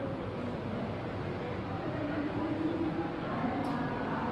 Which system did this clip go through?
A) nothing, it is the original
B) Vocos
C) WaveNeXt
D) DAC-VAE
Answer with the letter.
A